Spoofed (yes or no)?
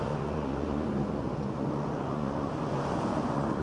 yes